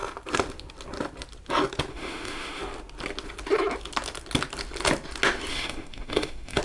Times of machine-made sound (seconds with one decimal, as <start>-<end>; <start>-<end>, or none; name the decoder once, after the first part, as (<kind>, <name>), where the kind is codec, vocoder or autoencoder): 1.9-2.6 (autoencoder, DAC-VAE); 5.5-6.6